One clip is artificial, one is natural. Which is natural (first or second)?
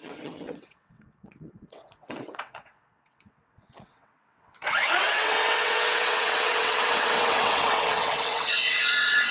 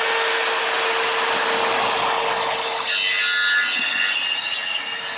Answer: second